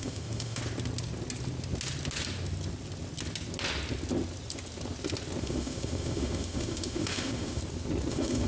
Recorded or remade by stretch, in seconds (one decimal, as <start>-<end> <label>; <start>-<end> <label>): 0.0-0.6 remade; 0.6-5.4 recorded; 5.4-7.6 remade; 7.6-8.1 recorded; 8.1-8.5 remade